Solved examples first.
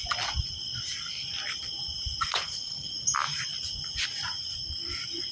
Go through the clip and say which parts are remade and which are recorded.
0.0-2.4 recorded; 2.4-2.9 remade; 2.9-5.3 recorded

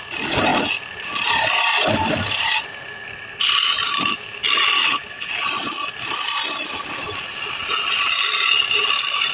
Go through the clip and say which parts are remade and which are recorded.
0.0-4.8 recorded; 4.8-5.3 remade; 5.3-9.3 recorded

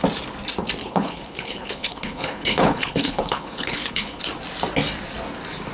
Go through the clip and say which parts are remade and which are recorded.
0.0-0.8 recorded; 0.8-4.2 remade; 4.2-5.7 recorded

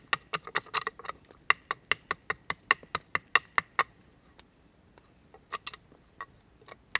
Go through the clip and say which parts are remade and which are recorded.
0.0-7.0 recorded

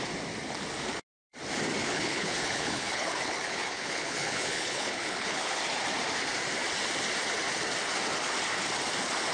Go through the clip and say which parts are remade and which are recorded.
0.0-1.8 recorded; 1.8-5.6 remade; 5.6-9.3 recorded

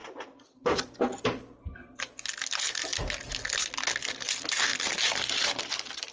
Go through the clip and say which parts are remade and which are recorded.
0.0-6.1 recorded

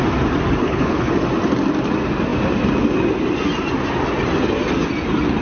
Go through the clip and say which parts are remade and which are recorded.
0.0-0.6 recorded; 0.6-1.1 remade; 1.1-5.4 recorded